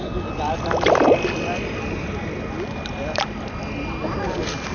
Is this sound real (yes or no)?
yes